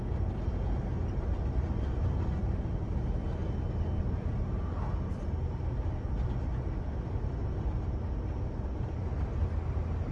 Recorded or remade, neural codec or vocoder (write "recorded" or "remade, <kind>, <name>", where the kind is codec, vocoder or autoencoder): recorded